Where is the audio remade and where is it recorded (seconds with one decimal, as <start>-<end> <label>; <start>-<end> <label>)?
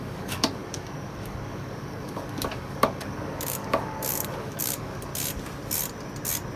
0.0-5.1 remade; 5.1-6.6 recorded